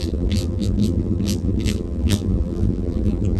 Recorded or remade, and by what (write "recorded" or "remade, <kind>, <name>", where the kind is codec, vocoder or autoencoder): remade, vocoder, BigVGAN v2